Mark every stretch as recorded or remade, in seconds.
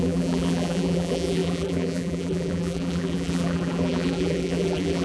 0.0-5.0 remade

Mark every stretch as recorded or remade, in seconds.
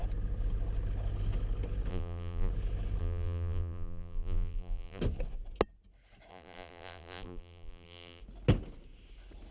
0.0-1.9 recorded; 1.9-2.5 remade; 2.5-3.0 recorded; 3.0-5.0 remade; 5.0-6.3 recorded; 6.3-8.2 remade; 8.2-9.5 recorded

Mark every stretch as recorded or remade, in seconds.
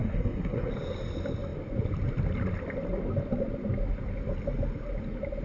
0.0-0.7 remade; 0.7-5.4 recorded